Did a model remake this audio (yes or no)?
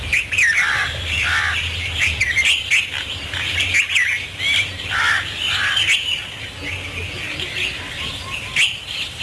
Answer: yes